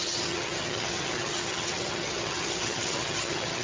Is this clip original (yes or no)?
no